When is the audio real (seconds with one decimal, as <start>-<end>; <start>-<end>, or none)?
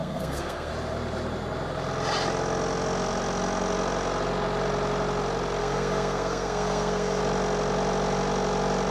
0.7-5.6; 7.2-8.9